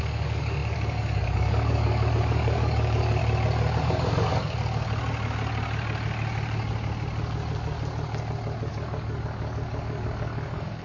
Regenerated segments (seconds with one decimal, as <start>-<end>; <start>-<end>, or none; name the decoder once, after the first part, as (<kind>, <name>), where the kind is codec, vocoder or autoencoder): 0.0-3.2 (codec, DAC); 3.8-4.3; 8.7-10.8

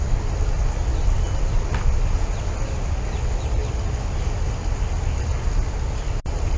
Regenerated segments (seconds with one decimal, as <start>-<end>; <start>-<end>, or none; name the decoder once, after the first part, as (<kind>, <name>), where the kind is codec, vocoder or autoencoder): none

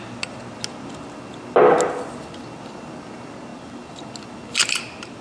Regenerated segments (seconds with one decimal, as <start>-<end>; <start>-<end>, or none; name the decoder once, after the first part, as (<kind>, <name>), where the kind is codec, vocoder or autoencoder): none